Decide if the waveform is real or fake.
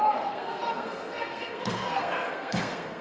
fake